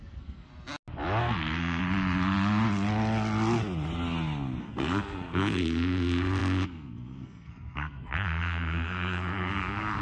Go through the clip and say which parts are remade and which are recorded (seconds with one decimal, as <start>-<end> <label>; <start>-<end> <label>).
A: 0.0-0.5 remade; 0.5-1.2 recorded; 1.2-1.8 remade; 1.8-4.6 recorded; 4.6-10.0 remade